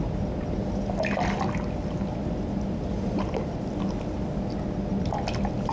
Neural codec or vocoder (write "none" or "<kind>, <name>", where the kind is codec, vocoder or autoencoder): none